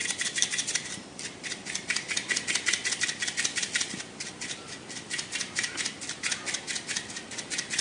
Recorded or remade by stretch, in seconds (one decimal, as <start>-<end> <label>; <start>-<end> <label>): 0.0-4.7 remade; 4.7-7.8 recorded